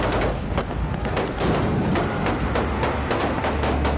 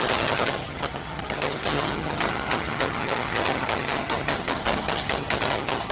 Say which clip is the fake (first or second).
second